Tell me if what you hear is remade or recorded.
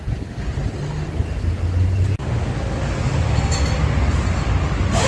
recorded